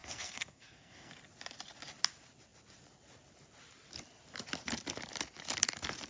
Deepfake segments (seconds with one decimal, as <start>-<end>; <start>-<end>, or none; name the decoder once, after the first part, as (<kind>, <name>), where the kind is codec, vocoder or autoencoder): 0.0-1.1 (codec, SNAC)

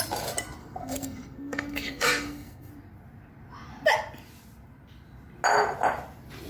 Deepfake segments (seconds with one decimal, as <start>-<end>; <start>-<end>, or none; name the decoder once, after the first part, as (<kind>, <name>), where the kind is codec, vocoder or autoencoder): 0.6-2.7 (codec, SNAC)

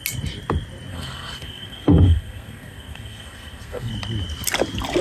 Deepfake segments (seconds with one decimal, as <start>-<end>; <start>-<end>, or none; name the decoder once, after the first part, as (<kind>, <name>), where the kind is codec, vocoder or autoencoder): 0.9-3.9 (codec, SNAC)

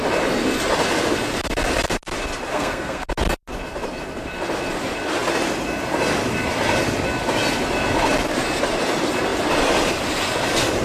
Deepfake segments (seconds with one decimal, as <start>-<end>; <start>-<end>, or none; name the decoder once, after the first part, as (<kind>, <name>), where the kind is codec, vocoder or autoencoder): 2.5-3.1 (codec, SNAC)